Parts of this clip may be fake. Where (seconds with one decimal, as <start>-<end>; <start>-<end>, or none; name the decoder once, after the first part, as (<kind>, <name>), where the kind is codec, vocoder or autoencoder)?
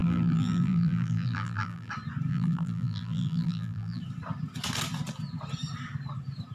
0.0-1.9 (vocoder, BigVGAN v2); 2.3-4.0